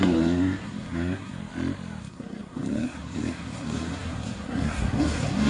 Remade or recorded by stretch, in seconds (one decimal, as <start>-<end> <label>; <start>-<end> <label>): 0.0-1.4 remade; 1.4-2.0 recorded; 2.0-5.5 remade